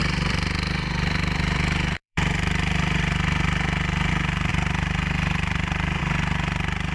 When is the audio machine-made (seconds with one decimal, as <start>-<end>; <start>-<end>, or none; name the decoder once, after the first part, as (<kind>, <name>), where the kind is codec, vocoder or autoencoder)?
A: 0.0-4.1 (vocoder, BigVGAN v2); 4.5-6.0